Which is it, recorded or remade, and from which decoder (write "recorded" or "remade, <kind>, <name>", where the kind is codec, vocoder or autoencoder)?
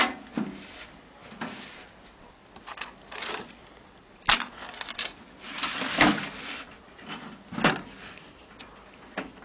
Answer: recorded